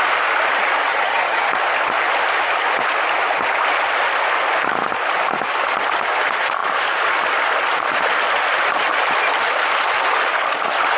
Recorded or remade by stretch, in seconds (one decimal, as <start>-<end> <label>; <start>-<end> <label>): 0.0-0.9 recorded; 0.9-1.5 remade; 1.5-11.0 recorded